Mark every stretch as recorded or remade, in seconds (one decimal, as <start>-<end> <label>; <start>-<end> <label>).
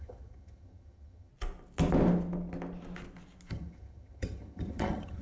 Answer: 0.0-1.3 remade; 1.3-3.5 recorded; 3.5-5.2 remade